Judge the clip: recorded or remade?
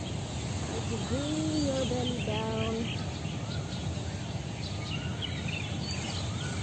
recorded